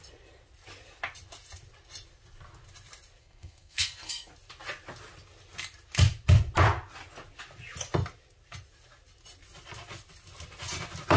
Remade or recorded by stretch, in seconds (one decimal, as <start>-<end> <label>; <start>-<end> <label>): 0.0-3.2 recorded; 3.2-4.3 remade; 4.3-11.2 recorded